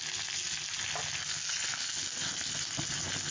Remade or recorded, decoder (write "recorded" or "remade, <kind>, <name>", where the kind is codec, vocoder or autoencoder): recorded